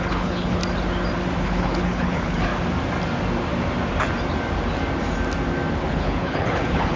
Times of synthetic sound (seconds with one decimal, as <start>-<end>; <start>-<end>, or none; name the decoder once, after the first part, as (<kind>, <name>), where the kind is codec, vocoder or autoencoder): 0.0-0.6 (codec, HILCodec); 1.4-2.5; 5.9-7.0